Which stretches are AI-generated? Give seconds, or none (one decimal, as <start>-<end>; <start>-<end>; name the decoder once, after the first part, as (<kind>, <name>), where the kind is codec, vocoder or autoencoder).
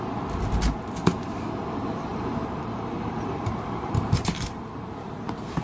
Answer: 2.1-5.6 (vocoder, BigVGAN v2)